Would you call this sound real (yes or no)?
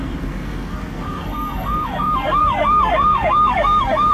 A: no